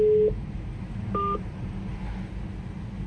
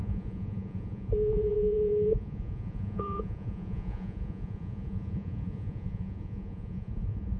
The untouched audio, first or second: first